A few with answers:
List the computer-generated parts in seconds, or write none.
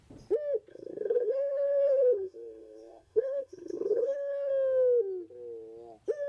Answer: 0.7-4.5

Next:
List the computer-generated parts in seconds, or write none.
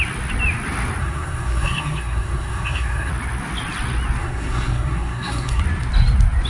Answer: 1.0-3.1; 4.2-5.6